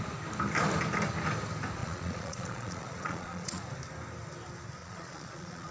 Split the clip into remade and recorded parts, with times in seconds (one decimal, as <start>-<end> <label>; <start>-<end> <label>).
0.0-1.8 recorded; 1.8-3.6 remade; 3.6-4.8 recorded; 4.8-5.7 remade